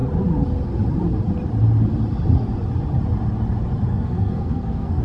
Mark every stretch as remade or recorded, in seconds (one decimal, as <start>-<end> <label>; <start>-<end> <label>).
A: 0.0-3.9 recorded; 3.9-5.0 remade